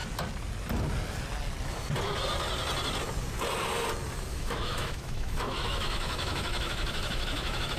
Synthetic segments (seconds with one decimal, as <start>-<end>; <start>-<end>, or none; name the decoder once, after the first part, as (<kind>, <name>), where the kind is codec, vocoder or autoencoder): 4.3-7.8 (autoencoder, DAC-VAE)